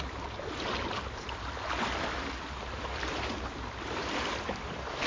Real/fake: real